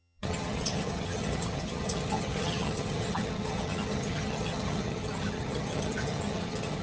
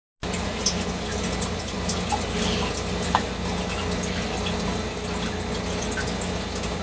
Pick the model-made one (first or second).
first